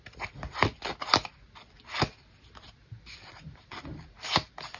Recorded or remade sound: recorded